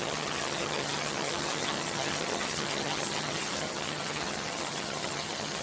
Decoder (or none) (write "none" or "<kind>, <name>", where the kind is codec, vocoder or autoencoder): vocoder, HiFi-GAN